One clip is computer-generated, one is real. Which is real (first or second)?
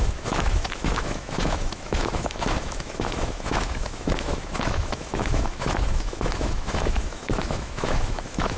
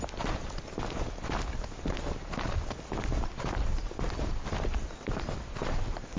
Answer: second